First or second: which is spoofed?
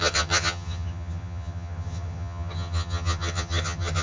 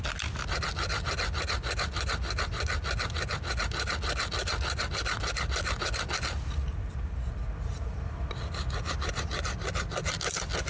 first